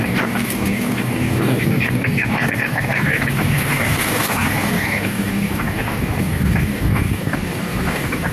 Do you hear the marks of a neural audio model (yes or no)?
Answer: yes